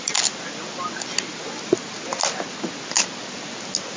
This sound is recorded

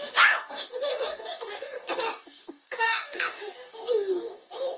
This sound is remade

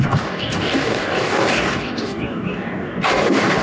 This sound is remade